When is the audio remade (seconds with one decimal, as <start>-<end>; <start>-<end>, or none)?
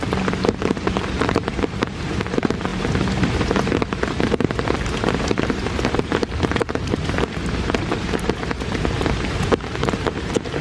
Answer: 0.0-10.6